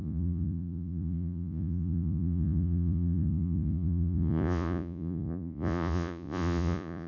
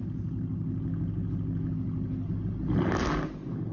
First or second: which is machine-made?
first